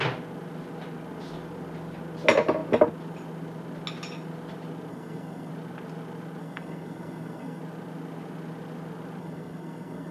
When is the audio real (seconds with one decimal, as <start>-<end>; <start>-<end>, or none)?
0.0-4.9; 5.5-6.4; 7.6-9.2